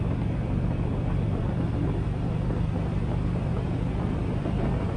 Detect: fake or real fake